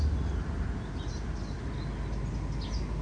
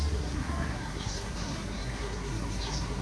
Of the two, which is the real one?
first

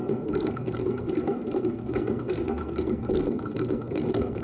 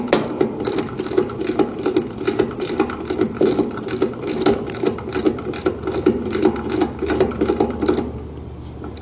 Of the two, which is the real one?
second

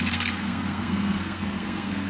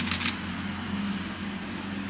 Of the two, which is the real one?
second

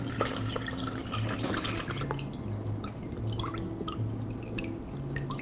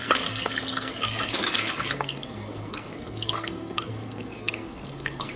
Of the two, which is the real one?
first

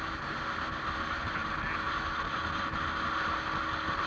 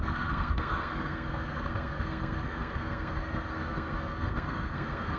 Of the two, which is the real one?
first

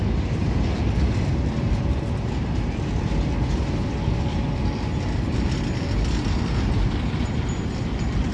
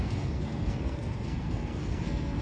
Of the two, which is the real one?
first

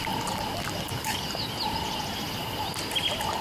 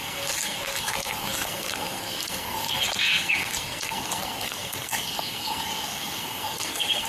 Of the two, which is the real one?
first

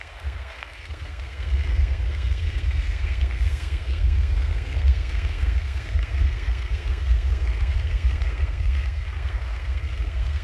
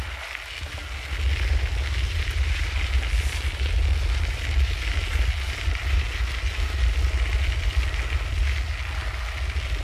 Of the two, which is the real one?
second